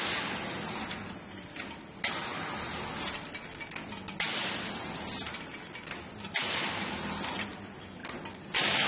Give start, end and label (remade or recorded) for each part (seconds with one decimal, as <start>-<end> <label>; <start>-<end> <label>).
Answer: 0.0-8.9 recorded